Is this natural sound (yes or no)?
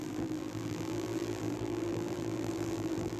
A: no